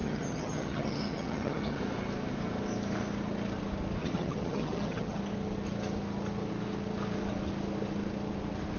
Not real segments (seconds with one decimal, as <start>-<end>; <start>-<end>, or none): 0.0-1.8; 4.0-5.2